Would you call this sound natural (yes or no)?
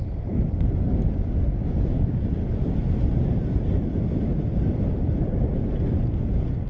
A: yes